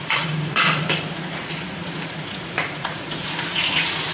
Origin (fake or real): fake